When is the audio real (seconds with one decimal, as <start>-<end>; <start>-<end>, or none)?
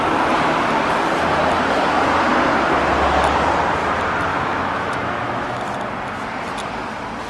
0.0-4.3; 5.6-7.3